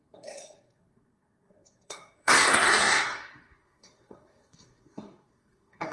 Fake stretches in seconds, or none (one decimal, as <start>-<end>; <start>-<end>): 0.0-5.9